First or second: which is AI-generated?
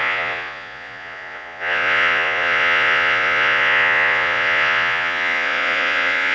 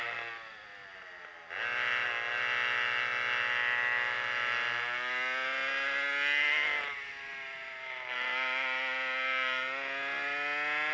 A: first